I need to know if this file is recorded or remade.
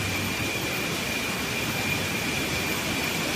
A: recorded